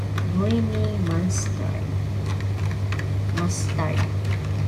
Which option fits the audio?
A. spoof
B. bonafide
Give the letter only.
B